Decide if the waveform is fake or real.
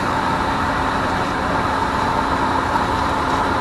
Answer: fake